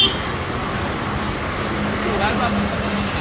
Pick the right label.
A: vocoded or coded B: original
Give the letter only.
B